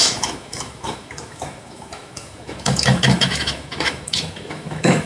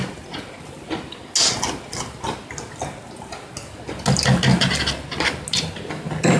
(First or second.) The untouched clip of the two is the second